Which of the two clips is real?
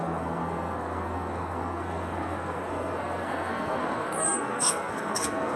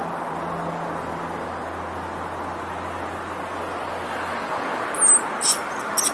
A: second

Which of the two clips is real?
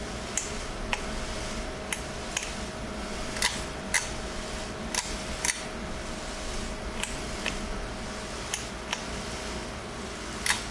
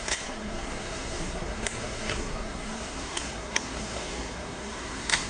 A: first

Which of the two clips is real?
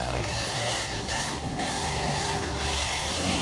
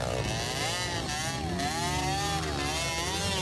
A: second